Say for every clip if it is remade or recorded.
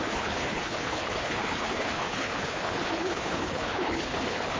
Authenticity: remade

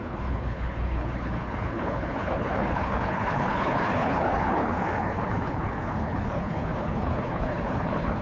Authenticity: remade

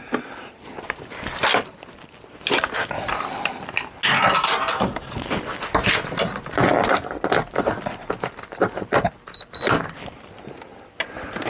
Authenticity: recorded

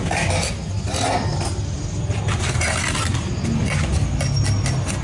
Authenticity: recorded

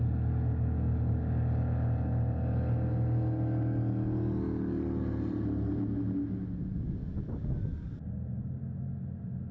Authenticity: recorded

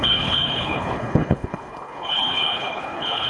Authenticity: remade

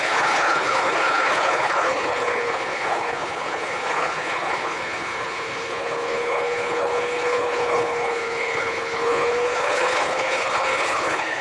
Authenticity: remade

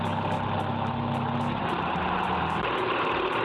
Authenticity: recorded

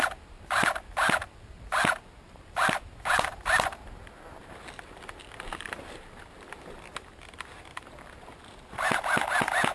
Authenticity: recorded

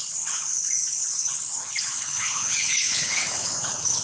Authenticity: remade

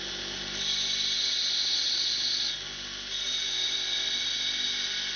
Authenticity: recorded